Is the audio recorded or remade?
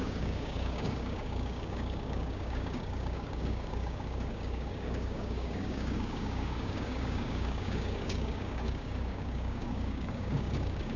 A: remade